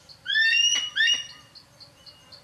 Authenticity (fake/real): real